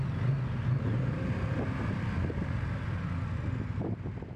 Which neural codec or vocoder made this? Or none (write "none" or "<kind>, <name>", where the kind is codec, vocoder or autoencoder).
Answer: none